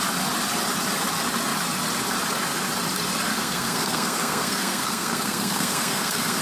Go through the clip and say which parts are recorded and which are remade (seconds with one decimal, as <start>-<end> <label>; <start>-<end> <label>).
0.0-3.3 recorded; 3.3-6.4 remade